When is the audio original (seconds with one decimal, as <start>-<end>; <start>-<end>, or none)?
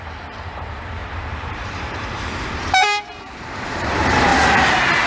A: 4.3-5.1